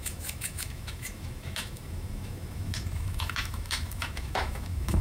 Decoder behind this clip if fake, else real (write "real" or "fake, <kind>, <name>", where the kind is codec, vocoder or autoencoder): fake, autoencoder, DAC-VAE